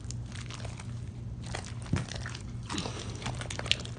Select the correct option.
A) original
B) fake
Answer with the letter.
A